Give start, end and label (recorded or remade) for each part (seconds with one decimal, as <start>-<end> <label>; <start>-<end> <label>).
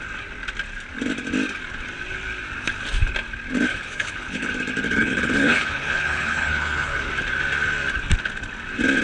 0.0-3.7 recorded; 3.7-4.5 remade; 4.5-4.9 recorded; 4.9-7.1 remade; 7.1-9.0 recorded